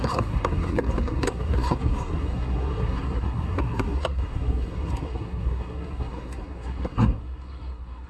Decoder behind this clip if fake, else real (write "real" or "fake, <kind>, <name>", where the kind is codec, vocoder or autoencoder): fake, codec, SNAC